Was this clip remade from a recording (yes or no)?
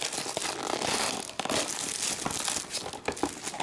no